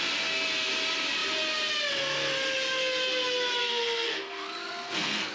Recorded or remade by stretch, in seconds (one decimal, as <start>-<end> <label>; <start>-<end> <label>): 0.0-3.6 recorded; 3.6-5.3 remade